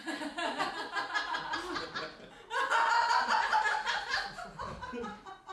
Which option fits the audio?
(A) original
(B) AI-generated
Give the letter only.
A